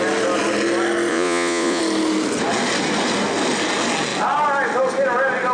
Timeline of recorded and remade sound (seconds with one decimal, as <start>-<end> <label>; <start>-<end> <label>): 0.0-1.1 recorded; 1.1-1.8 remade; 1.8-5.5 recorded